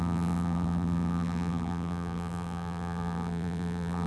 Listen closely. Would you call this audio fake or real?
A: fake